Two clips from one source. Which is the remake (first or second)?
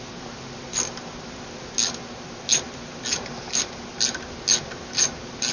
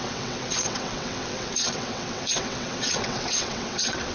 second